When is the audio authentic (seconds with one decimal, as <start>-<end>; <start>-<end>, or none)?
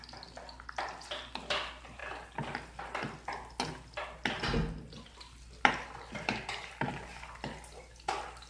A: 0.0-8.5